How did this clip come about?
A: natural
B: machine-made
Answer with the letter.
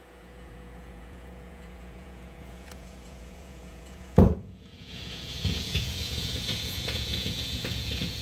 B